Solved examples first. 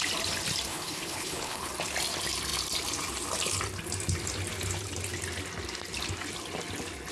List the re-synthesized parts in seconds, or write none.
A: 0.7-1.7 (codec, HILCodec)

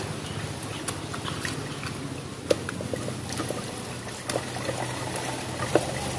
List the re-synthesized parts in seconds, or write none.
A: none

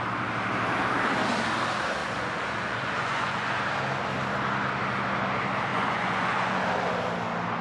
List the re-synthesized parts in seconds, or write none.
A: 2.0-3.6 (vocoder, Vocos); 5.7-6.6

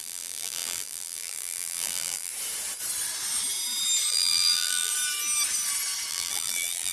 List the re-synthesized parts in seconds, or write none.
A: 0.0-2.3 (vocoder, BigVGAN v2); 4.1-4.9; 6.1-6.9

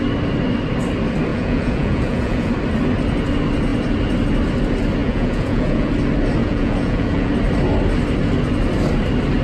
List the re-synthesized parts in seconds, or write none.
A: 1.3-2.5 (vocoder, Vocos); 5.0-5.9; 6.4-7.3

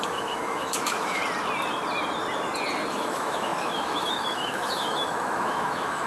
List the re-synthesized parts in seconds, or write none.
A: 0.0-1.2 (autoencoder, DAC-VAE); 2.9-6.1

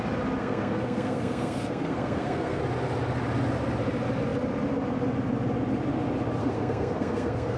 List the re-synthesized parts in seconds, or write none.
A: 0.4-2.6 (codec, SNAC); 6.4-7.6

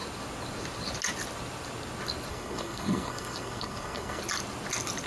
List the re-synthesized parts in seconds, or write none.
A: 2.3-4.2 (codec, SNAC)